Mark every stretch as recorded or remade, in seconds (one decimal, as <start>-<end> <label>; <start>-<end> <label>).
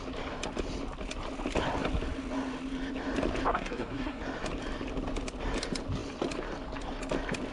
0.0-3.5 recorded; 3.5-4.2 remade; 4.2-7.5 recorded